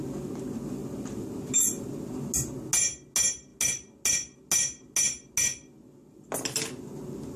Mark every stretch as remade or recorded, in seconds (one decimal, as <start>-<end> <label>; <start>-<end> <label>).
0.0-7.4 recorded